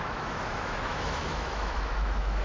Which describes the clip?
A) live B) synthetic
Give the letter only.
B